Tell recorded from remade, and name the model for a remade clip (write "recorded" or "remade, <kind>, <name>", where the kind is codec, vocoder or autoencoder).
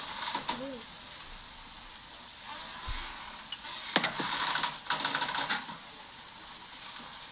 recorded